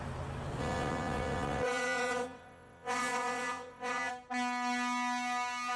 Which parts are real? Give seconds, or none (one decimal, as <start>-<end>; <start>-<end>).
0.0-0.6; 4.1-5.8